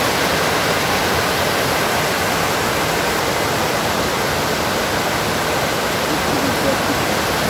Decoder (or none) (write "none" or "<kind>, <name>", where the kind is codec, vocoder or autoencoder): none